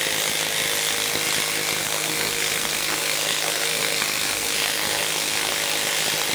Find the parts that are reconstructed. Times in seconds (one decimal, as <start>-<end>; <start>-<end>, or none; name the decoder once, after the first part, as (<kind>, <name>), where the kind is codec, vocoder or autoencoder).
1.8-5.5 (codec, SNAC)